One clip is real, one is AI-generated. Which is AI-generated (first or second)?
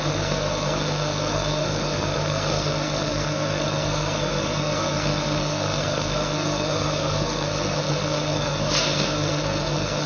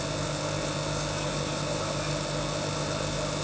first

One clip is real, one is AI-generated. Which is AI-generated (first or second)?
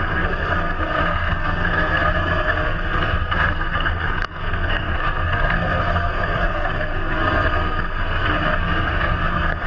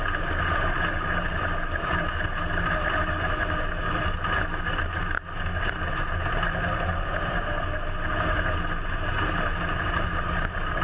first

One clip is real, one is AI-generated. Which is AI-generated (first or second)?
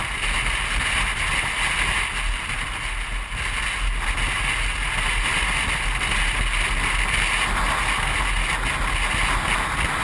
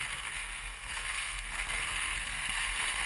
second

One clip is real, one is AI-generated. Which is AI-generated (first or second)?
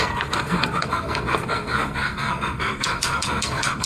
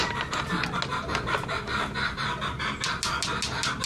first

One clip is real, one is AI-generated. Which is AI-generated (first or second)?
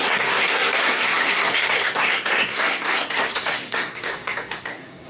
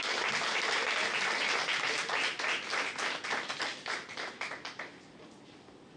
first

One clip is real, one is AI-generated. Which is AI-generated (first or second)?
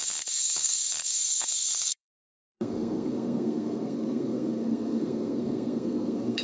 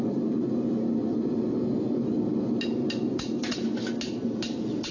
first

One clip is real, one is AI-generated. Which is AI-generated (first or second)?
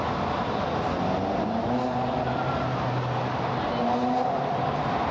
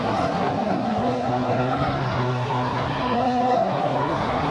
second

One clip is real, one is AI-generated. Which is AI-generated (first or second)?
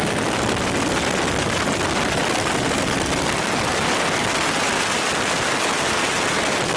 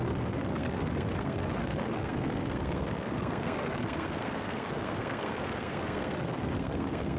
second